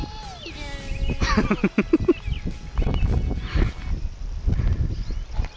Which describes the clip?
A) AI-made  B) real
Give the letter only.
B